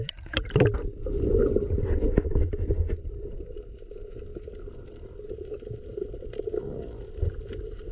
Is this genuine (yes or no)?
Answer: yes